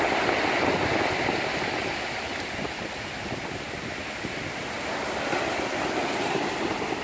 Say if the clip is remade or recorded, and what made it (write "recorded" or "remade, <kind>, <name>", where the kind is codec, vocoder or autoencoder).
recorded